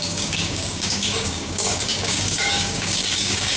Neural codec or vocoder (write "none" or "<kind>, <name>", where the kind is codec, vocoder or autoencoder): codec, DAC